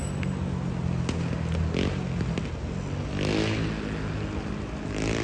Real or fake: real